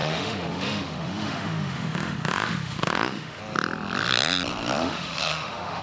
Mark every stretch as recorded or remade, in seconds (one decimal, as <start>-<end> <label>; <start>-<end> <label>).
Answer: 0.0-3.4 remade; 3.4-4.8 recorded; 4.8-5.8 remade